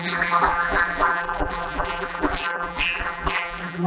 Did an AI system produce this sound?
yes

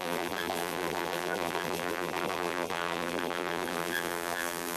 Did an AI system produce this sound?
yes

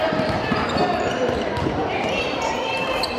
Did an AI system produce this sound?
yes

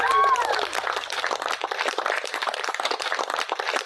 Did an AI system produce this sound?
yes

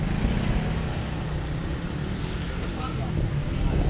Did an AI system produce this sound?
no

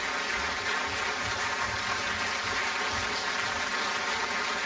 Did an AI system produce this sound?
no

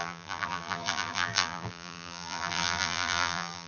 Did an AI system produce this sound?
yes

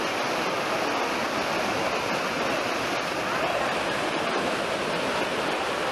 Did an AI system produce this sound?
no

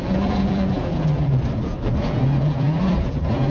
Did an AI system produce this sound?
yes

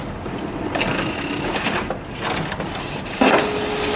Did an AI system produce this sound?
yes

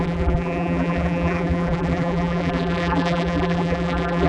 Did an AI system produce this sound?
yes